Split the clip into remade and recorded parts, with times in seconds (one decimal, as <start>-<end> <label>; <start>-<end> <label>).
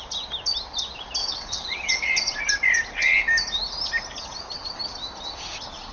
0.0-1.2 recorded; 1.2-2.4 remade; 2.4-5.9 recorded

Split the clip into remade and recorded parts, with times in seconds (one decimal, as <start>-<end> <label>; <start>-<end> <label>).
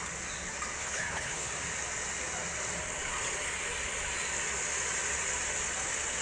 0.0-0.8 recorded; 0.8-1.5 remade; 1.5-6.2 recorded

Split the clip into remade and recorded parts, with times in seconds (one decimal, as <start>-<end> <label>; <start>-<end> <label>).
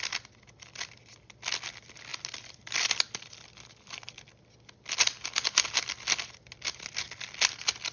0.0-7.9 recorded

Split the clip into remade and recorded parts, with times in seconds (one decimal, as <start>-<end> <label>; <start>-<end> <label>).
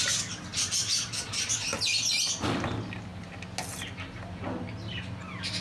0.0-5.6 recorded